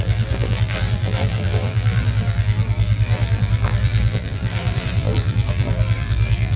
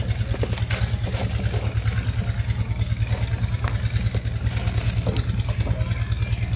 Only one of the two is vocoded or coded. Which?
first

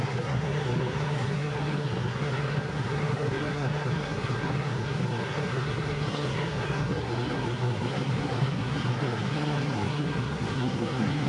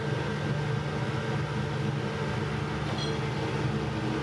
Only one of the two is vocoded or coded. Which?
first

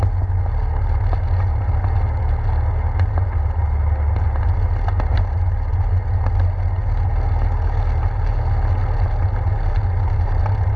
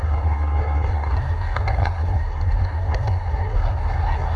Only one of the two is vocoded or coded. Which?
second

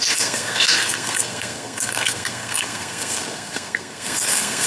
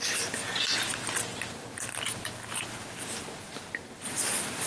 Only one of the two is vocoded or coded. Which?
first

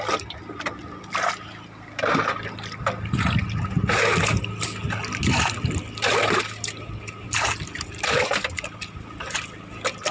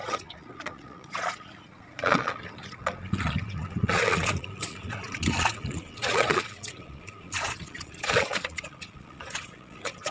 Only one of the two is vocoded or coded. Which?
second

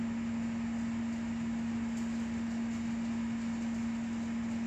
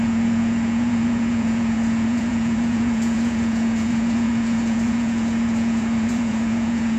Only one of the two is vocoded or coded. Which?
second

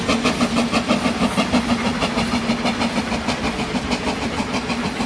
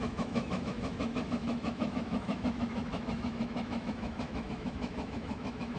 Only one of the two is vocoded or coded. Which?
second